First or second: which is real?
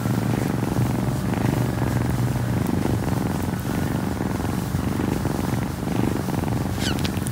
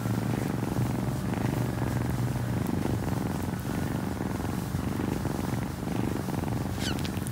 second